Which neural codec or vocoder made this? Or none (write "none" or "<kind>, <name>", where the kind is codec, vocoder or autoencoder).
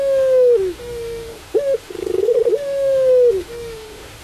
autoencoder, DAC-VAE